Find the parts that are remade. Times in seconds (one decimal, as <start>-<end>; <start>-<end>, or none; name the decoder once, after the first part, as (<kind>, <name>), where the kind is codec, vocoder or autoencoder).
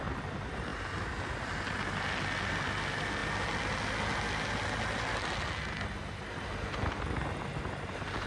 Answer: none